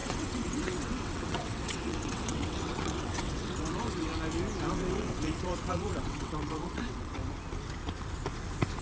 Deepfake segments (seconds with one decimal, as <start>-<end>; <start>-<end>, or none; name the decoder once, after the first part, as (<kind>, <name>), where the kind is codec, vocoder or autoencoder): 0.0-4.1 (vocoder, WaveNeXt); 4.7-7.2